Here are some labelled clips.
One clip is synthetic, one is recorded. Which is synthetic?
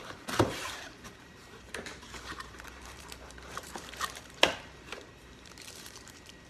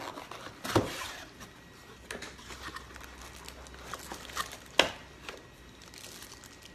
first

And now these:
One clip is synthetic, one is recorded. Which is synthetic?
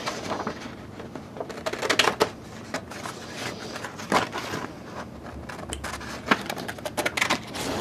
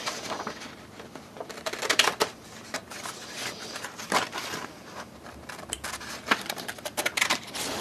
second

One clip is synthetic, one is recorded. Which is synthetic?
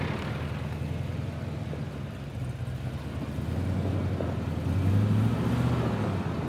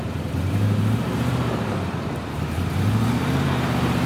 second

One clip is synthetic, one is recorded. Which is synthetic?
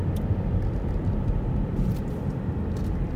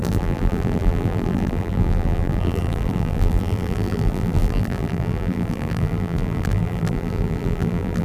second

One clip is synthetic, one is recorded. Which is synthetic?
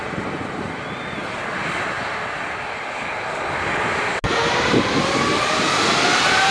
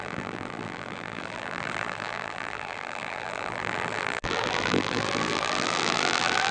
second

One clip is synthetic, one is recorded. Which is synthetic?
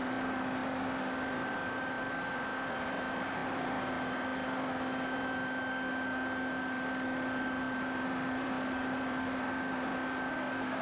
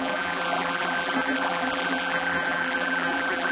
second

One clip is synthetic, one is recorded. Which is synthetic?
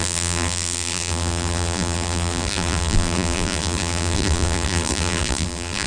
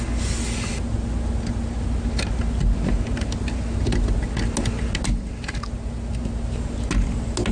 first